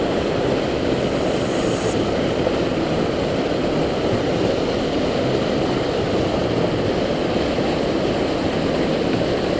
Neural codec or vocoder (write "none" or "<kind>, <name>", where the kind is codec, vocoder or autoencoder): none